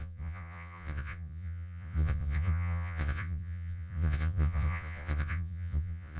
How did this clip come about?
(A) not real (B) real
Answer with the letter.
A